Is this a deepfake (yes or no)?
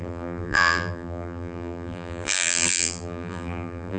yes